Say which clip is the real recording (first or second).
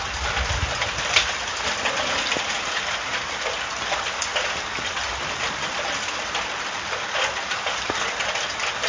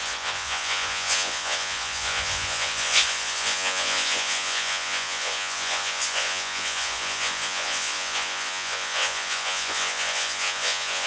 first